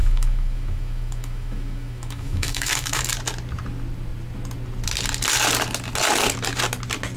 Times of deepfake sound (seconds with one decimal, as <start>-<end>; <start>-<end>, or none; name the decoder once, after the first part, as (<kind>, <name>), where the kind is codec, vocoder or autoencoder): 0.0-3.0 (autoencoder, DAC-VAE)